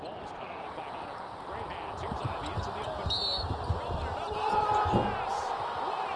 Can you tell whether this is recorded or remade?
recorded